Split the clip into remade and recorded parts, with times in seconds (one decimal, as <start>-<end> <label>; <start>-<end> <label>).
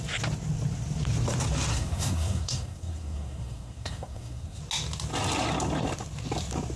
0.0-1.7 recorded; 1.7-4.6 remade; 4.6-6.8 recorded